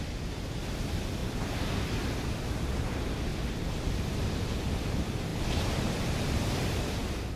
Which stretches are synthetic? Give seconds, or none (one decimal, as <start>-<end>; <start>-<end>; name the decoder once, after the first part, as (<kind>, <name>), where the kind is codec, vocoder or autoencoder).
1.2-2.2 (vocoder, BigVGAN v2); 3.3-4.5; 5.3-6.5